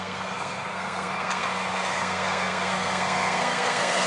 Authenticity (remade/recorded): remade